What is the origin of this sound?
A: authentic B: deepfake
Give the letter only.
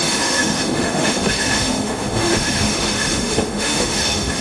B